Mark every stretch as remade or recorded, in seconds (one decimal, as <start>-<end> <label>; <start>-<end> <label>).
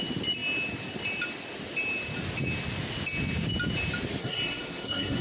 0.0-4.2 recorded; 4.2-5.2 remade